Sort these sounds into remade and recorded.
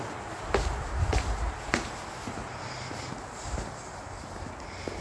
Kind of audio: recorded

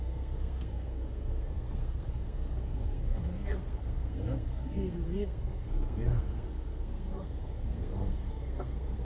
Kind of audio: remade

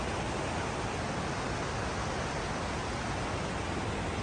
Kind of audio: recorded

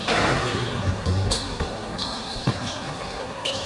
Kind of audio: remade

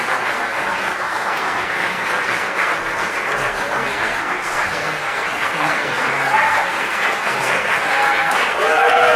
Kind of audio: remade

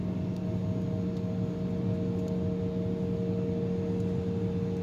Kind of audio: recorded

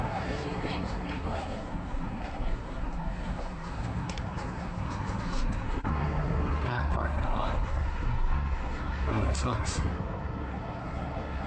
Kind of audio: remade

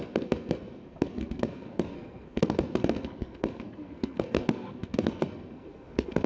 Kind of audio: remade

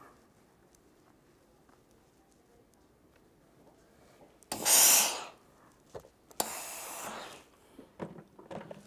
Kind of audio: recorded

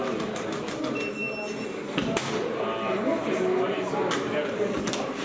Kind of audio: recorded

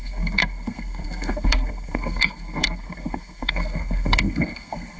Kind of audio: remade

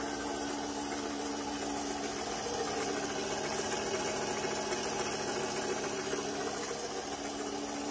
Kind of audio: recorded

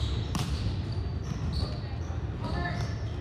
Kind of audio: recorded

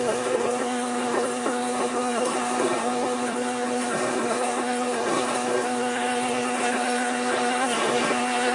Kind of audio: remade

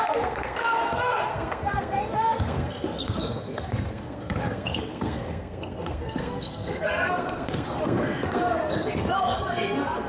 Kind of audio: remade